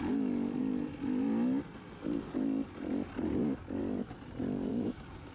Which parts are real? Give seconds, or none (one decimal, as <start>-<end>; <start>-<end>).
0.0-4.7